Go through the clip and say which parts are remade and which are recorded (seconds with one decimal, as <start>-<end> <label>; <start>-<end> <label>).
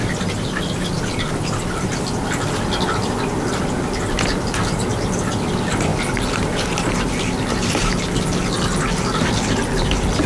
0.0-10.3 recorded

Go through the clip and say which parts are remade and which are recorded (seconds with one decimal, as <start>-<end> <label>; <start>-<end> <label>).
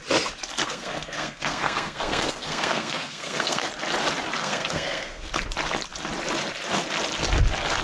0.0-0.6 recorded; 0.6-3.7 remade; 3.7-4.4 recorded; 4.4-5.3 remade; 5.3-7.8 recorded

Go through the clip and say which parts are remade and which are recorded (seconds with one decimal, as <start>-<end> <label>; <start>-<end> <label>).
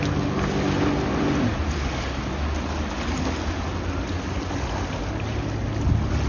0.0-6.3 recorded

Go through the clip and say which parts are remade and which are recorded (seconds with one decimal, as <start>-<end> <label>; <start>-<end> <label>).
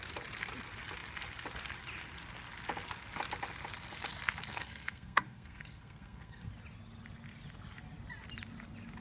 0.0-4.5 recorded; 4.5-6.5 remade; 6.5-9.0 recorded